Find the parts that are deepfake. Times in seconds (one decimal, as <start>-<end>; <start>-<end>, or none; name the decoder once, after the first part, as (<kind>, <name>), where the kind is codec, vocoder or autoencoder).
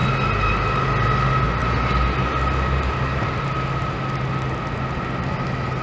none